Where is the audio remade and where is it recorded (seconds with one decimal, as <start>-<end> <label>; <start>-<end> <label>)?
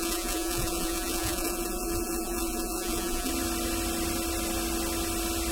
0.0-3.3 remade; 3.3-5.5 recorded